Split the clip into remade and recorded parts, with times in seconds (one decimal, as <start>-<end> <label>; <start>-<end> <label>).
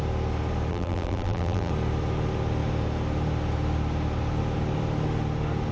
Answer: 0.0-0.7 recorded; 0.7-1.7 remade; 1.7-5.7 recorded